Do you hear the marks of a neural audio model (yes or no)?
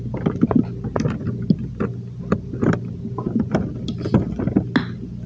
no